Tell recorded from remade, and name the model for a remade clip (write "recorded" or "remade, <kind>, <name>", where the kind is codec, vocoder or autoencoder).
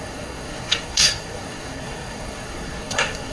remade, codec, SNAC